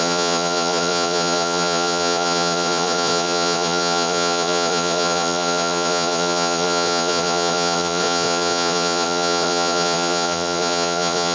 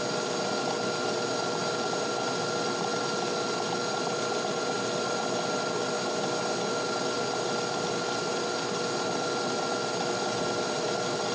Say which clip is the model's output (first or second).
first